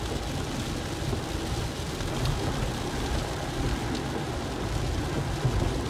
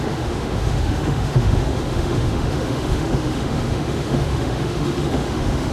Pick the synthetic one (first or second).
second